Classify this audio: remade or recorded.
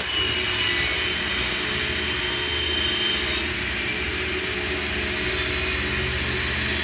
recorded